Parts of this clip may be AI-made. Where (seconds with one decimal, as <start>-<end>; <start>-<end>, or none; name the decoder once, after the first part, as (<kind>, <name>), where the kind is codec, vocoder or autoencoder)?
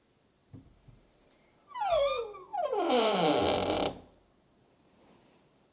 0.4-2.0 (vocoder, BigVGAN v2); 2.5-5.7